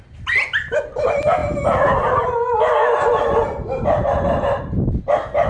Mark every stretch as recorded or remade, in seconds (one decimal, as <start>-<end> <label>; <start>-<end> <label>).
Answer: 0.0-5.5 recorded